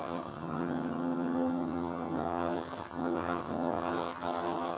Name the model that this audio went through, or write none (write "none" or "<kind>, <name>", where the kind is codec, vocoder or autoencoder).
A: vocoder, HiFi-GAN